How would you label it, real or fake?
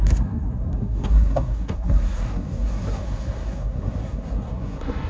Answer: fake